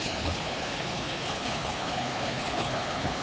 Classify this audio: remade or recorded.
remade